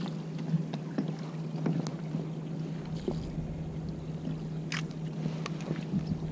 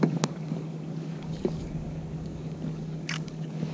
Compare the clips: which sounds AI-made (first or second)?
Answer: second